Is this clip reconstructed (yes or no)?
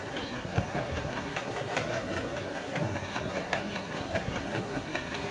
yes